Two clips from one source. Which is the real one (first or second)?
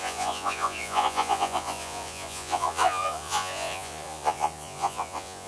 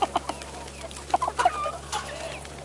second